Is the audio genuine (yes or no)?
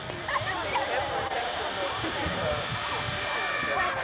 yes